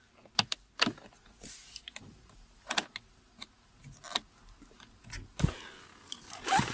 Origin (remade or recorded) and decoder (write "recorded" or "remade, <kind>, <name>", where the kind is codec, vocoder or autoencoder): recorded